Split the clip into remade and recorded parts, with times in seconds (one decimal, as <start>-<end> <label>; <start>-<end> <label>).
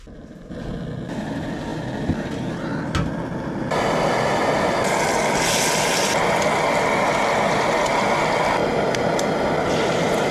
0.0-10.3 recorded